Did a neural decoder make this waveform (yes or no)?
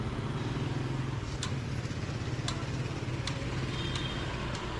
no